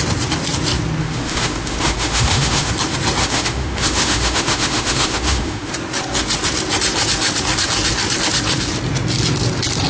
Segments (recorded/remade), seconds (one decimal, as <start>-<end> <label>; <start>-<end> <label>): 0.0-1.0 recorded; 1.0-2.7 remade; 2.7-3.2 recorded; 3.2-5.7 remade; 5.7-9.9 recorded